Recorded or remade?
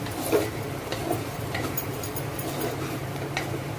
remade